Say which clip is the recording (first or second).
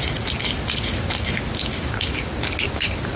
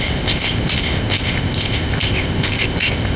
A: first